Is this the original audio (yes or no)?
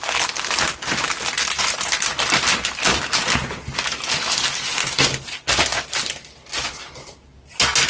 yes